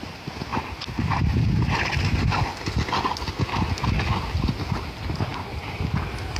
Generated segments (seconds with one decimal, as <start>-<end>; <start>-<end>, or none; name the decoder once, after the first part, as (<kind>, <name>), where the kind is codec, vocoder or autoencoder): 5.3-5.9 (vocoder, BigVGAN v2)